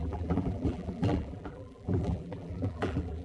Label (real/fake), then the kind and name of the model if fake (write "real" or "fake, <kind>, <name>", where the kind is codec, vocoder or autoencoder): fake, vocoder, BigVGAN v2